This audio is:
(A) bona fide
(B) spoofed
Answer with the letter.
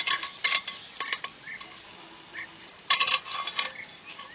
A